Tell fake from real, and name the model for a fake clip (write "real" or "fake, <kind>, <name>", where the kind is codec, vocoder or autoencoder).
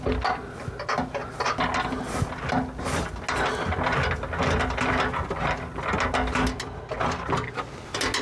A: real